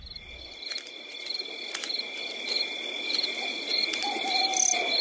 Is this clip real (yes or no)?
yes